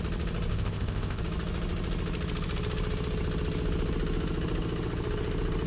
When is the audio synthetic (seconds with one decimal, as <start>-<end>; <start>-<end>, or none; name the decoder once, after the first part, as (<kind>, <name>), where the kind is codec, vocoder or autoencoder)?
0.5-1.2 (codec, ZipCodec)